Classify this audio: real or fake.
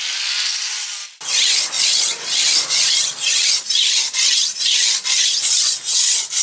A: fake